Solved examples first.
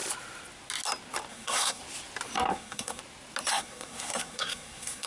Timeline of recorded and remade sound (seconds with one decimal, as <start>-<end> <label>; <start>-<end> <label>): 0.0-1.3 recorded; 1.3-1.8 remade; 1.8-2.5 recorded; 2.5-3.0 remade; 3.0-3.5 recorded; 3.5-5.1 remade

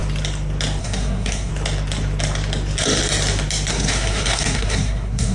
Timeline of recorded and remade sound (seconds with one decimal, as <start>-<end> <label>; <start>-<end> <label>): 0.0-0.8 recorded; 0.8-1.5 remade; 1.5-3.7 recorded; 3.7-5.3 remade

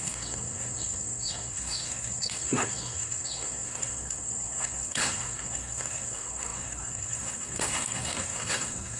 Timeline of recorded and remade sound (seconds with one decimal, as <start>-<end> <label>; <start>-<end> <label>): 0.0-9.0 remade

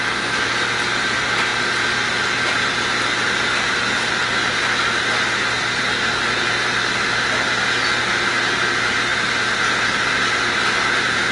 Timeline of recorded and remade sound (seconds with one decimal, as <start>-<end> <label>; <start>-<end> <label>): 0.0-11.3 recorded

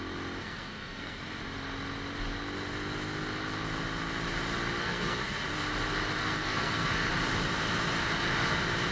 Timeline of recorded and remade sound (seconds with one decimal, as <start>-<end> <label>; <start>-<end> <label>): 0.0-0.4 recorded; 0.4-1.2 remade; 1.2-4.8 recorded; 4.8-5.4 remade; 5.4-6.2 recorded; 6.2-7.1 remade; 7.1-8.9 recorded

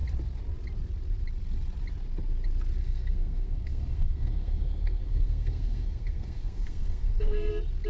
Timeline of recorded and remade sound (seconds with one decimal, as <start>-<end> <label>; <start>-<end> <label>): 0.0-2.8 recorded; 2.8-7.5 remade; 7.5-7.9 recorded

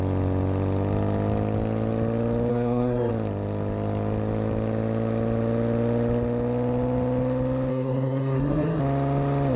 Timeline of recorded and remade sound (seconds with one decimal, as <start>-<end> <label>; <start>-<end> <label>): 0.0-2.5 recorded; 2.5-3.1 remade; 3.1-7.7 recorded; 7.7-8.8 remade; 8.8-9.6 recorded

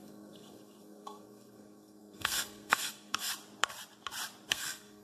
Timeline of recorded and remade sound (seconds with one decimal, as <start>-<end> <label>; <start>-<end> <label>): 0.0-3.3 remade; 3.3-4.5 recorded; 4.5-5.0 remade